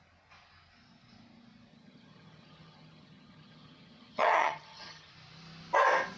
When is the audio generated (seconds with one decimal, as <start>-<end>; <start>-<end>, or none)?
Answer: 1.7-5.1